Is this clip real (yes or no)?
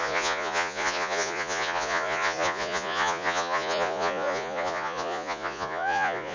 no